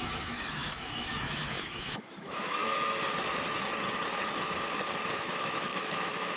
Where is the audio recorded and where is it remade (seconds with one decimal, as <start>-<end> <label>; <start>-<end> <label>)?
0.0-2.6 remade; 2.6-5.1 recorded; 5.1-6.4 remade